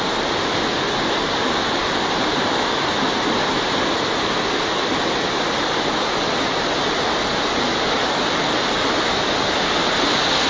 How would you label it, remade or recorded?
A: recorded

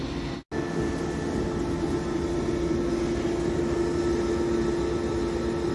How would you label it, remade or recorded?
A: recorded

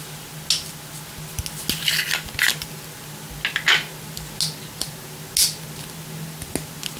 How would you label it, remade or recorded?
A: recorded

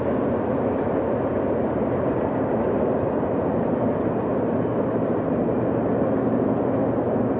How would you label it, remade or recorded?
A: recorded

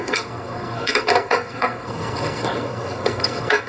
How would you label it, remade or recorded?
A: remade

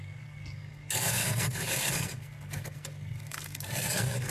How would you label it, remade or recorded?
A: remade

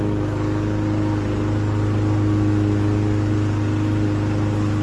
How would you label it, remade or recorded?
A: recorded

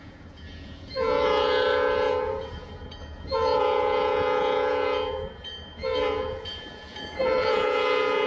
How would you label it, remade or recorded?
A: remade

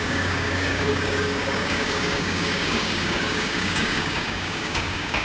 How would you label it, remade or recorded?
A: remade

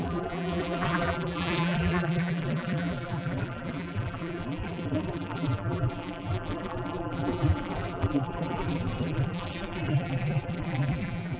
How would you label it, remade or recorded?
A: remade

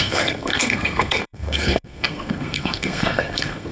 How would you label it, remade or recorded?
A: remade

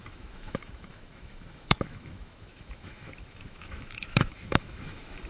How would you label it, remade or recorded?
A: remade